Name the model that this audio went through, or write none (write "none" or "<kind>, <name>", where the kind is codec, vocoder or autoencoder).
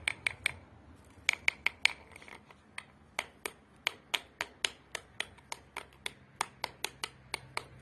none